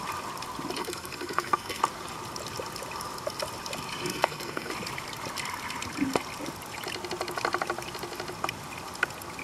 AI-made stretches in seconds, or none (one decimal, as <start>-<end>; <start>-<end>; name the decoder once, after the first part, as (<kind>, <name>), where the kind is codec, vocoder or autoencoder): 0.8-1.8 (codec, SNAC); 4.1-4.7